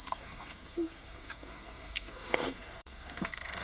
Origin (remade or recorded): remade